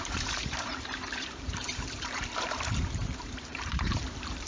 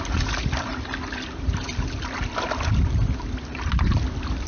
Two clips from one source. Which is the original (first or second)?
second